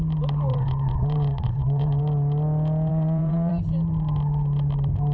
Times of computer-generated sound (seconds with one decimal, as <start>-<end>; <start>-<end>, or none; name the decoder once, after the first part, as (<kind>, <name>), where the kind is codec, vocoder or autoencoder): 0.5-2.0 (vocoder, WaveNeXt); 2.9-3.5